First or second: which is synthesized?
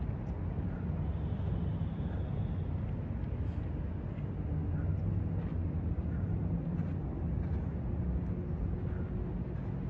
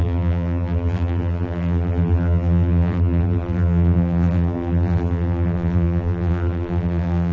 second